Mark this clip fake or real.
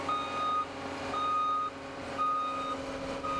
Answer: real